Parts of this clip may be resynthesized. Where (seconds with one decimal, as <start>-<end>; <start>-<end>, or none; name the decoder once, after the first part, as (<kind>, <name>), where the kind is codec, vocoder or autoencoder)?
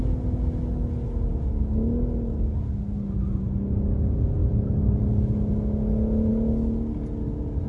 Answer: none